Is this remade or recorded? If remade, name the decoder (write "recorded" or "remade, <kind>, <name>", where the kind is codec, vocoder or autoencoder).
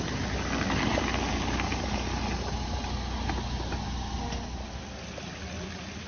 recorded